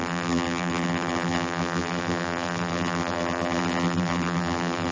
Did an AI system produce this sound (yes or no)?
yes